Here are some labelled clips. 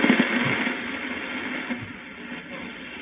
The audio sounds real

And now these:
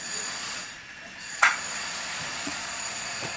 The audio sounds fake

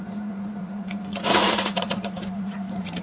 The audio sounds fake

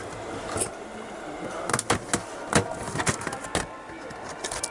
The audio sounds real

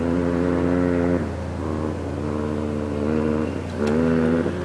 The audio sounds real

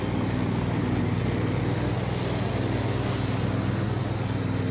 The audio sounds real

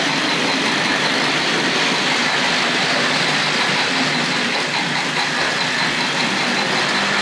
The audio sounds real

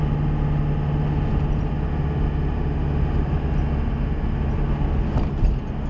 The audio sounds real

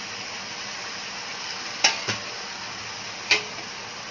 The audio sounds real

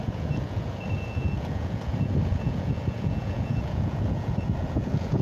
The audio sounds fake